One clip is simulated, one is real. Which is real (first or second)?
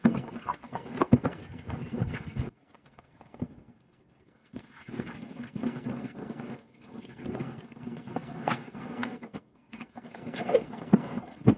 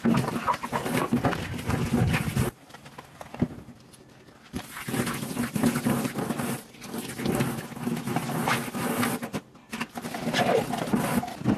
second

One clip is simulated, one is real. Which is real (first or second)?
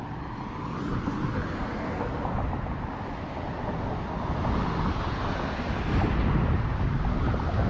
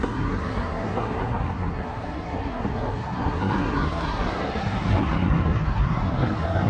first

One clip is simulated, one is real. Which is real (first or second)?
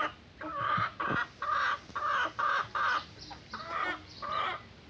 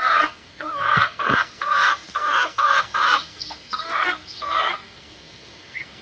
first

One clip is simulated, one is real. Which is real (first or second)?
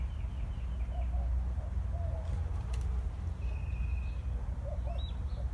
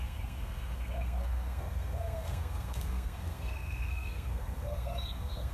first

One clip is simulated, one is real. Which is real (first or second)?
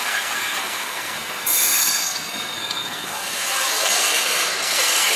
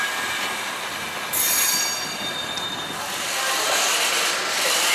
second